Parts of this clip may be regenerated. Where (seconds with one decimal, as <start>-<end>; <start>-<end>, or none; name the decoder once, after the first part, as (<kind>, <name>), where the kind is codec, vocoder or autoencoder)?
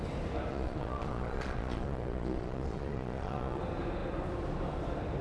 0.5-3.6 (vocoder, Vocos)